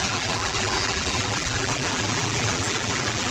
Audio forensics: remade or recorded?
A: remade